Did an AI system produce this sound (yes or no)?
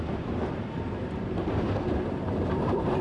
yes